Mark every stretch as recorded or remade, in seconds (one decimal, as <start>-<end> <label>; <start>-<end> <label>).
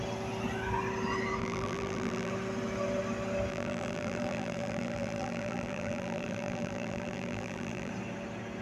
0.0-1.4 recorded; 1.4-2.3 remade; 2.3-3.5 recorded; 3.5-7.9 remade; 7.9-8.6 recorded